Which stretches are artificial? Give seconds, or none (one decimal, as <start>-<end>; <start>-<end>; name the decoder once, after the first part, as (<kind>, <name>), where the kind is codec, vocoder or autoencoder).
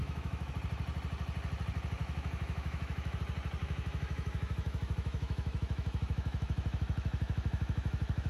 0.0-0.5 (autoencoder, DAC-VAE); 2.0-3.2; 3.6-8.3